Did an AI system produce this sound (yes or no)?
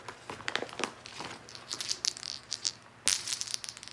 no